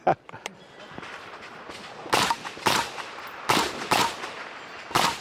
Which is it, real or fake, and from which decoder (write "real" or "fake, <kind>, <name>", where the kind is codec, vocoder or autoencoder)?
real